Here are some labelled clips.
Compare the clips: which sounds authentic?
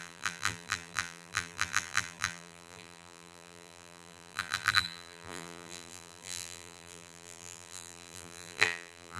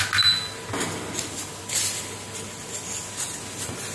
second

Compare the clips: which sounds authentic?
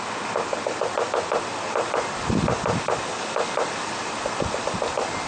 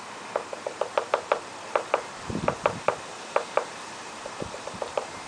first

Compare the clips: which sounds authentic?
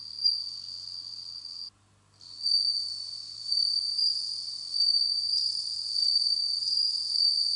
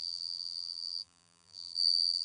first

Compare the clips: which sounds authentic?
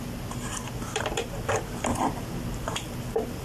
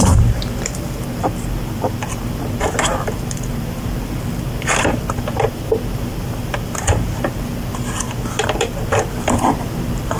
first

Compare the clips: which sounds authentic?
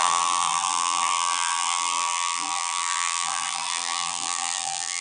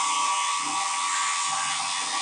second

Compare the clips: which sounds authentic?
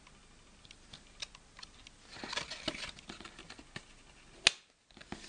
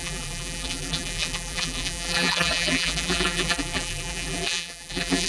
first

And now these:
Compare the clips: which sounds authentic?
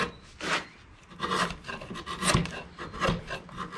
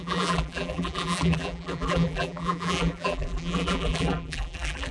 first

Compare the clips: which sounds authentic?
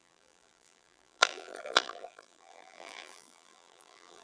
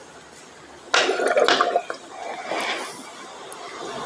second